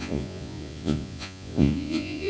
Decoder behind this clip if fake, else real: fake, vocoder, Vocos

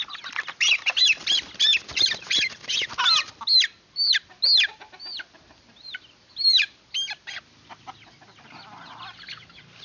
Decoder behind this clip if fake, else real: real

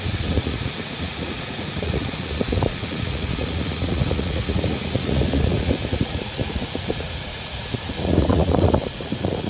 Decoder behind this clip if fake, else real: fake, vocoder, Vocos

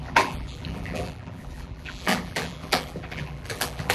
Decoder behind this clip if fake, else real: fake, vocoder, BigVGAN v2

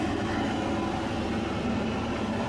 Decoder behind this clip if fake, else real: real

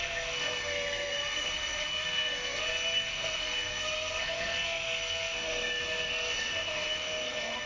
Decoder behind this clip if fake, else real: fake, codec, SNAC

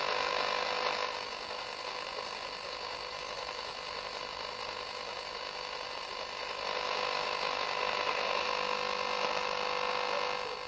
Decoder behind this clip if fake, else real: real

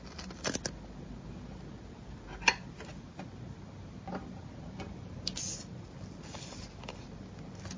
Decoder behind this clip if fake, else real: real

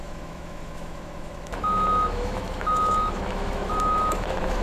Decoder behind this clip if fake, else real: fake, autoencoder, DAC-VAE